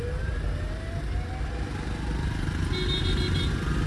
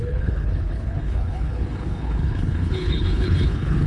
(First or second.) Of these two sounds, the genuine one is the first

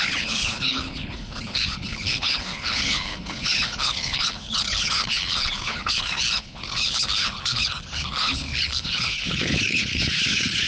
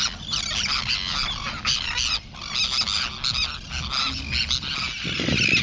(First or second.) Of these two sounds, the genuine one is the second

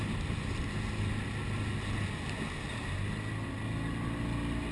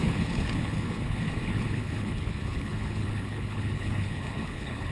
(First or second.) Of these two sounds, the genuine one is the first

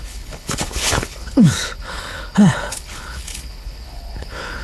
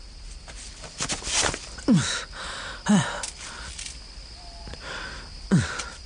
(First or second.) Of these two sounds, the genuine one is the second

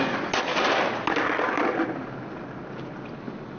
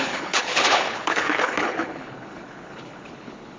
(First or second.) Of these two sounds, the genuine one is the first